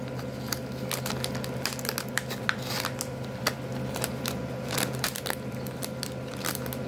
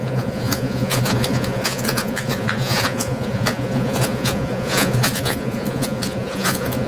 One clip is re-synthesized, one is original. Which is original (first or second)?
first